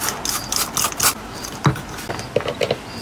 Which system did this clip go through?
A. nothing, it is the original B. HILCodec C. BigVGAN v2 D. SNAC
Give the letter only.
A